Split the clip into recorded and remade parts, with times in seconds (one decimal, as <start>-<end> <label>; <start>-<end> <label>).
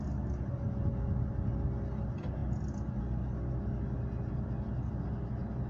0.0-5.7 recorded